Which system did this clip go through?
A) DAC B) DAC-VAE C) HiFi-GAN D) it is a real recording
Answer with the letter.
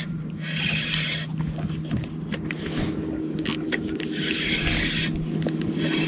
D